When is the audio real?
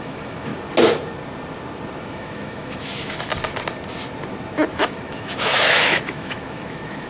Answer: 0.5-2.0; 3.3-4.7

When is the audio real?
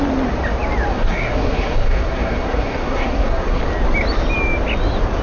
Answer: 0.0-0.9; 3.6-5.2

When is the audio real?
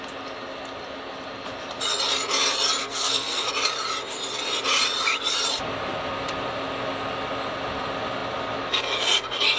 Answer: 0.0-2.8; 3.5-9.6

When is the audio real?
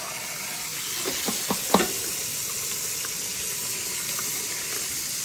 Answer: 0.0-5.2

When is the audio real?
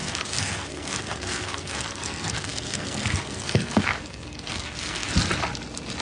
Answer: 5.1-6.0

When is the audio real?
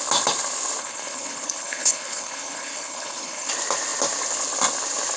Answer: 0.0-0.8; 3.5-5.2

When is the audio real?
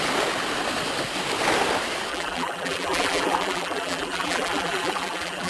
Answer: 0.0-2.1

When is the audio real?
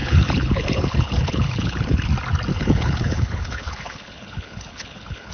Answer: 2.1-2.5